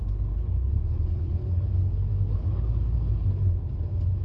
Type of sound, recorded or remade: remade